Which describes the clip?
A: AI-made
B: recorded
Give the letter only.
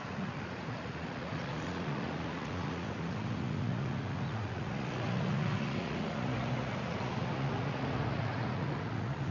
A